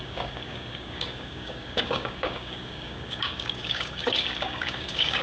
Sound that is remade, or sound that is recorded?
remade